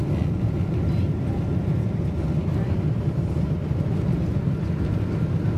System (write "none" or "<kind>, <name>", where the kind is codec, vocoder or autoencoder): none